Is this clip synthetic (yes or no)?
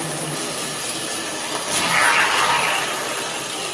no